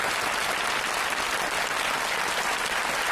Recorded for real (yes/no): yes